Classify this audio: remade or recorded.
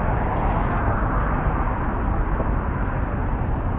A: recorded